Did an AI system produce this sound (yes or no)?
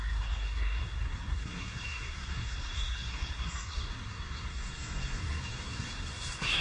yes